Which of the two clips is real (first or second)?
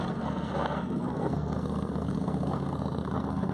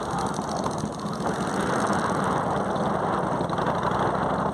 second